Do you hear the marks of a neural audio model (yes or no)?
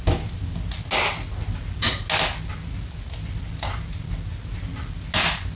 no